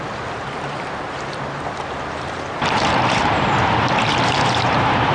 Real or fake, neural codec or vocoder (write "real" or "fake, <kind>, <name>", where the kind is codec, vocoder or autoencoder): fake, vocoder, BigVGAN v2